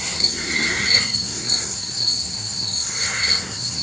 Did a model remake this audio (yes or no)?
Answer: yes